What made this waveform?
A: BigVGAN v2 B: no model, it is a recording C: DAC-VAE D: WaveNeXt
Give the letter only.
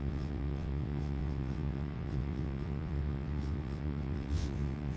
D